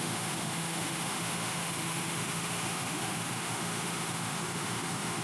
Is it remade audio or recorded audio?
remade